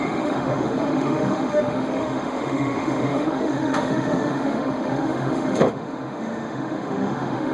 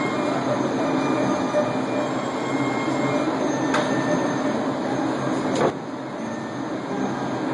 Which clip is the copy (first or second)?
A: first